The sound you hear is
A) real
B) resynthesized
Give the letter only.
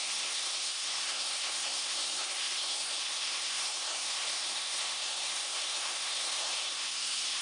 B